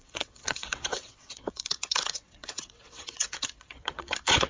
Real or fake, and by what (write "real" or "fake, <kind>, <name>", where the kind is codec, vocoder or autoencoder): fake, vocoder, WaveNeXt